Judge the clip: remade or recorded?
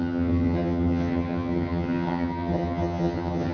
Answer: remade